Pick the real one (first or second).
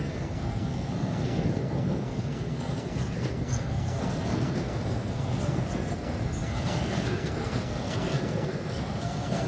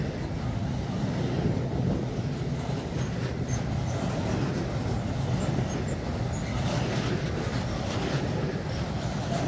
second